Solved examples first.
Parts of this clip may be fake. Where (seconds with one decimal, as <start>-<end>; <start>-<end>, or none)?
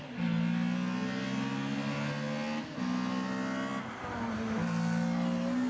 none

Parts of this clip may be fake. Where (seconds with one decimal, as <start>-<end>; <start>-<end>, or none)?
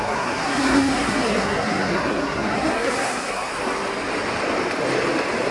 0.0-3.5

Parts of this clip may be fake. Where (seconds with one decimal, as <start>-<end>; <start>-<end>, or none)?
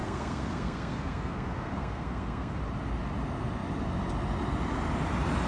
0.0-2.6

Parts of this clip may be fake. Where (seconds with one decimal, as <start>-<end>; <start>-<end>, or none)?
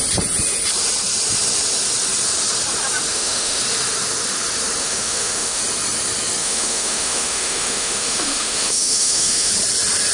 3.1-3.6; 4.8-5.6; 6.4-9.5